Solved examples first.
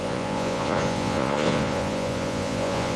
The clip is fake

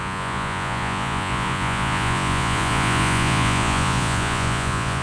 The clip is fake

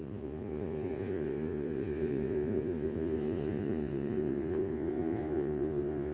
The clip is fake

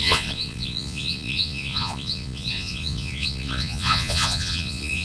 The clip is fake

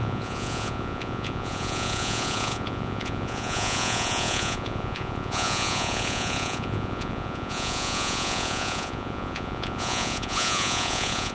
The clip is fake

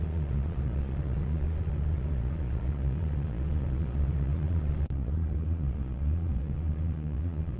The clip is fake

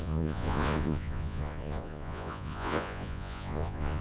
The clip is fake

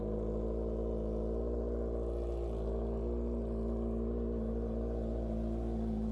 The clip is real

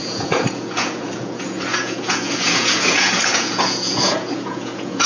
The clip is fake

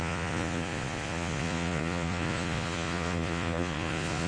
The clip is fake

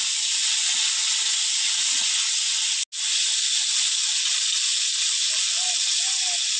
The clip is real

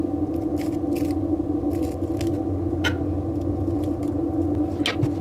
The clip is real